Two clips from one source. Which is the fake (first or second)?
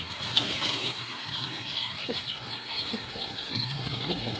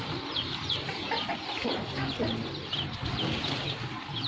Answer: first